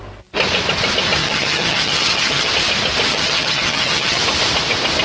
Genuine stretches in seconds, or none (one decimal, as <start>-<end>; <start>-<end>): 0.0-1.2; 2.5-3.1; 4.2-5.0